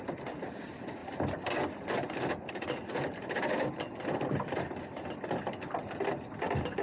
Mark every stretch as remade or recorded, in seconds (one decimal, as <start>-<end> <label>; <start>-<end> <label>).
0.0-6.8 recorded